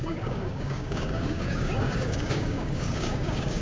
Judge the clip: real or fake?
fake